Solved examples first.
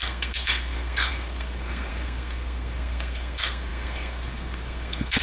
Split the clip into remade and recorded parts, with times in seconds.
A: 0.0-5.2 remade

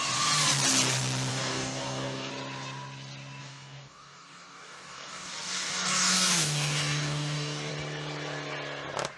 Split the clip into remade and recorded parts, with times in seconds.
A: 0.0-1.3 recorded; 1.3-2.3 remade; 2.3-3.4 recorded; 3.4-7.7 remade; 7.7-9.2 recorded

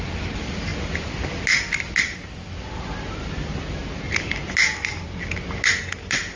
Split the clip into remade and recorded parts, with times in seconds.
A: 0.0-6.4 recorded

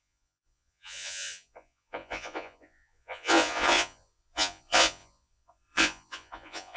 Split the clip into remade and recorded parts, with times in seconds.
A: 0.0-6.8 remade